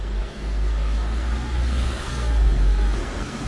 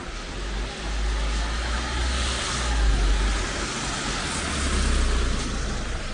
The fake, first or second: first